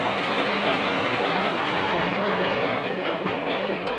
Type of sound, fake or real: fake